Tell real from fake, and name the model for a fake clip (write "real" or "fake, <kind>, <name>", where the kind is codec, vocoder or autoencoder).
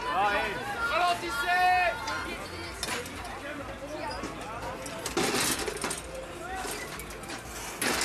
real